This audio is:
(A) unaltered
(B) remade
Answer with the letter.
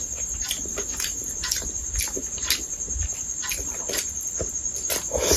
B